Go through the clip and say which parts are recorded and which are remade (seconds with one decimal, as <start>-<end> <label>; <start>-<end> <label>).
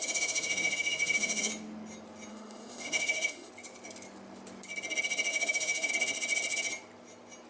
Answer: 0.0-1.5 remade; 1.5-2.3 recorded; 2.3-3.5 remade; 3.5-5.3 recorded; 5.3-5.9 remade; 5.9-7.5 recorded